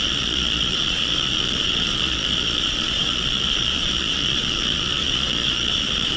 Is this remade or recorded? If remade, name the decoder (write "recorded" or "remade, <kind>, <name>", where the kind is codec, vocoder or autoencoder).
remade, vocoder, Vocos